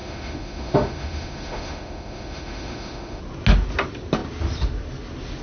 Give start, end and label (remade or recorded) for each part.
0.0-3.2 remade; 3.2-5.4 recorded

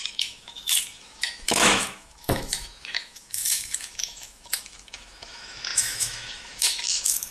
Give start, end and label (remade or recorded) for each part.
0.0-7.3 remade

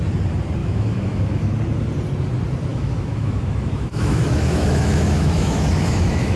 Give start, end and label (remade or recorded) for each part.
0.0-0.6 recorded; 0.6-1.5 remade; 1.5-2.7 recorded; 2.7-6.4 remade

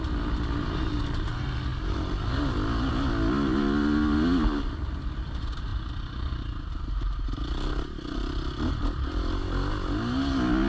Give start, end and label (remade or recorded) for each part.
0.0-10.7 recorded

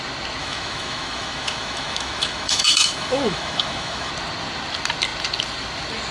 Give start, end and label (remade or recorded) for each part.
0.0-0.4 recorded; 0.4-4.1 remade; 4.1-6.1 recorded

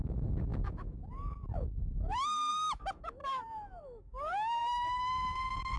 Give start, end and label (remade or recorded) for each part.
0.0-5.8 remade